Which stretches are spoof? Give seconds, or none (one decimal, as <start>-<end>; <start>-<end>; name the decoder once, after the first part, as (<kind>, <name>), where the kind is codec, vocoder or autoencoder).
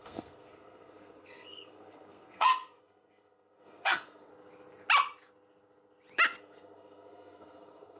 0.0-4.3 (codec, SNAC); 6.4-8.0